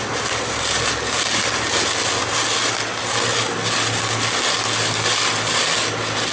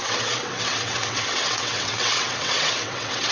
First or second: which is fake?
second